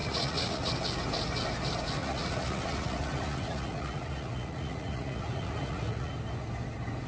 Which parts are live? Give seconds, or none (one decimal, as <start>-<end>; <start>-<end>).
0.7-2.0; 6.1-7.1